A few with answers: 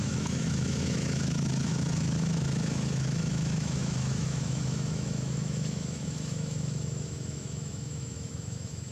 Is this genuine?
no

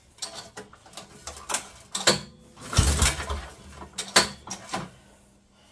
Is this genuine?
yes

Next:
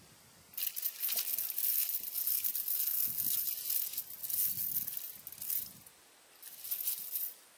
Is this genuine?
yes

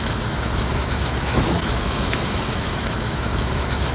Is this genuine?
no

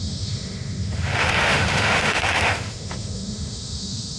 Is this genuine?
no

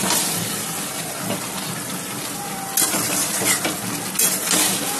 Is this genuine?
yes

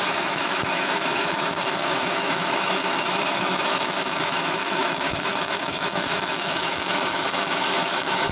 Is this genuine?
no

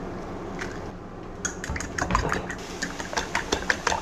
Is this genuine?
yes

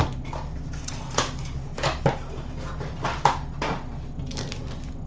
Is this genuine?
yes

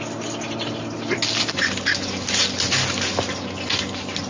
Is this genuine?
yes